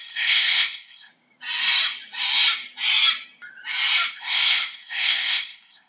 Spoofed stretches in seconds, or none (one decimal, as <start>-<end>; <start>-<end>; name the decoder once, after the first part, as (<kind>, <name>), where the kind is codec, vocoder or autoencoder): 0.0-1.1 (codec, ZipCodec); 4.1-5.9